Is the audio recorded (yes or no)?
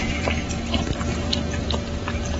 yes